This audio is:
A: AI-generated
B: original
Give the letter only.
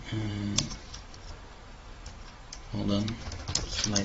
A